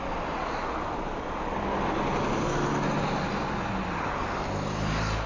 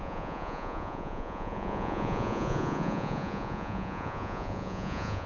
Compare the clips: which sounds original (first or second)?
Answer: first